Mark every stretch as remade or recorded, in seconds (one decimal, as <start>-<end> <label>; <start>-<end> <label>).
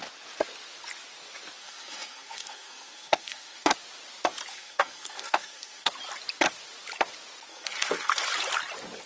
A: 0.0-1.6 recorded; 1.6-3.7 remade; 3.7-4.5 recorded; 4.5-5.9 remade; 5.9-7.5 recorded; 7.5-8.2 remade; 8.2-9.1 recorded